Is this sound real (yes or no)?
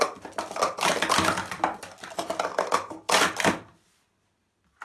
yes